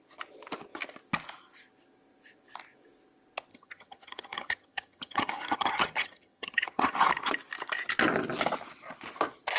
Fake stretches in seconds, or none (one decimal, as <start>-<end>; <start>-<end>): 3.5-7.1